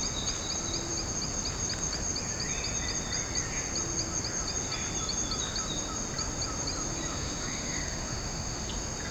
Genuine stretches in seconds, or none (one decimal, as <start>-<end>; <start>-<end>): 0.0-7.1; 8.7-9.1